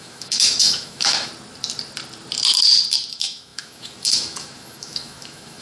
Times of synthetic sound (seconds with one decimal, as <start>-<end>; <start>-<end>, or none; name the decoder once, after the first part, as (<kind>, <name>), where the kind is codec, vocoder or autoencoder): 0.0-1.3 (autoencoder, DAC-VAE); 3.1-5.6